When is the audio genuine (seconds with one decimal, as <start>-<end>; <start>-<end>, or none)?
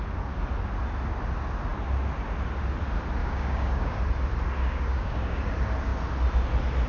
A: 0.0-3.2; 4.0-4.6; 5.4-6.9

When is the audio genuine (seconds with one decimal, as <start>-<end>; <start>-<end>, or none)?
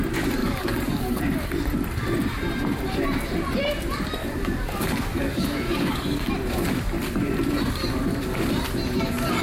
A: 0.0-0.4; 1.2-4.2; 6.3-9.4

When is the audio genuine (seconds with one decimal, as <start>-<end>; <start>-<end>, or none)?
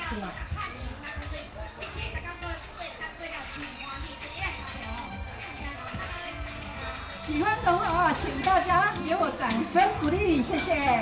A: 6.7-8.7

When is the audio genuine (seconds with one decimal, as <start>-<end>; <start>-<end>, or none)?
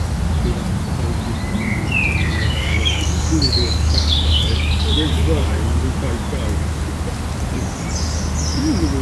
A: 0.0-2.2; 5.5-9.0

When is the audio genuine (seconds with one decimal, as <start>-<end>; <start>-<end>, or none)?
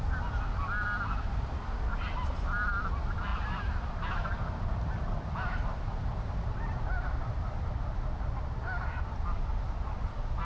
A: 0.0-10.4